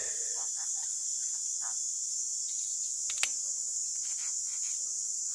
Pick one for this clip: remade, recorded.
recorded